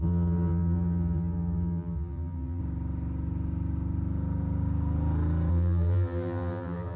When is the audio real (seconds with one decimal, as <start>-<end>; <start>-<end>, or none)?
2.6-5.5